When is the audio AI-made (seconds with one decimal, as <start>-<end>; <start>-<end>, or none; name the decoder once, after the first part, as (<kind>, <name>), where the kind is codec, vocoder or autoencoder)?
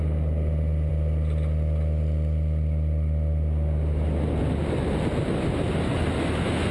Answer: none